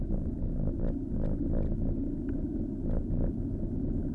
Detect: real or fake real